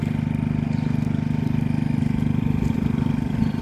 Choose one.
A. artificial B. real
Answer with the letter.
B